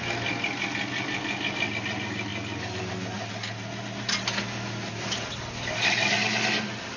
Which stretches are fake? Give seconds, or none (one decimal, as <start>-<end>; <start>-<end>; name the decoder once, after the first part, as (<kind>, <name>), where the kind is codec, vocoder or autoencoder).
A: none